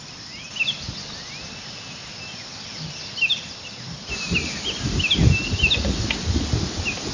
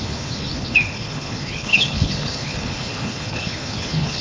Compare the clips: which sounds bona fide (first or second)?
first